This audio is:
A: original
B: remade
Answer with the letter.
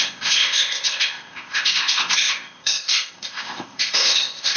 B